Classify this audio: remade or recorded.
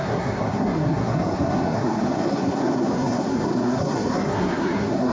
remade